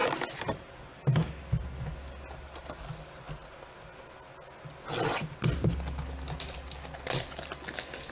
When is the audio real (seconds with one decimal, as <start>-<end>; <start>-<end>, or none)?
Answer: 0.0-8.1